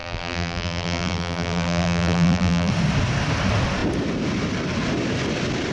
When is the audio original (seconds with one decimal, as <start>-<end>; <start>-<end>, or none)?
2.7-5.7